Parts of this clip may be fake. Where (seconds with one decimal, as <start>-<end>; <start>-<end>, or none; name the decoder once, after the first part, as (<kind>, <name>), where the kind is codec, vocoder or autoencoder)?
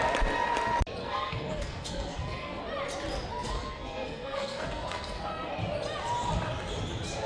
1.0-2.6 (codec, SNAC); 3.3-5.5